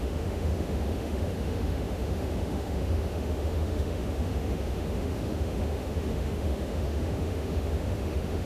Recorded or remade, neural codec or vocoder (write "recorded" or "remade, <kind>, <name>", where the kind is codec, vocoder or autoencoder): remade, autoencoder, DAC-VAE